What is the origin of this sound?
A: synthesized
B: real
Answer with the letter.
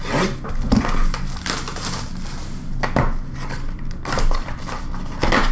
B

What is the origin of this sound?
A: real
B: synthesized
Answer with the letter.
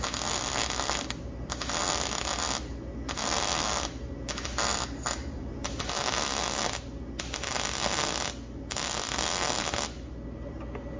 A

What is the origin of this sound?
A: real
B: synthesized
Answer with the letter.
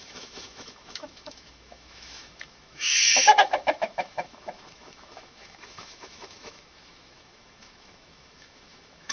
B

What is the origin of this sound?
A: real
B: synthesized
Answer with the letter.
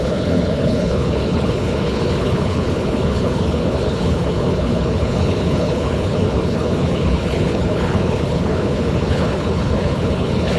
B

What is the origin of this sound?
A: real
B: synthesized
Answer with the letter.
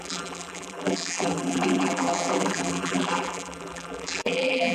B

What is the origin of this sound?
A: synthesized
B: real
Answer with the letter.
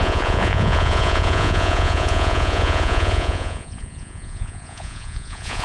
A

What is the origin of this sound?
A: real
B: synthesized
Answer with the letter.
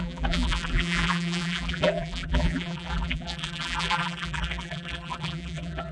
B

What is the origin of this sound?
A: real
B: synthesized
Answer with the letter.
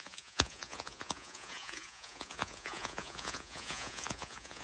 B